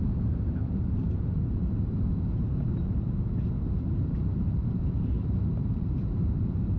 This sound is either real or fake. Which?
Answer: fake